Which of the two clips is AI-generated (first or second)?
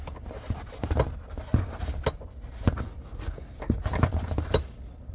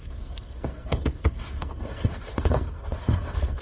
second